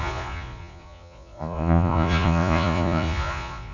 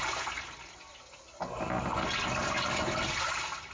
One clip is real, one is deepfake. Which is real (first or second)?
second